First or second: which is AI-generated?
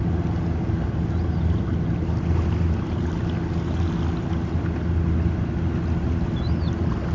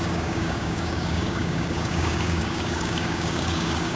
second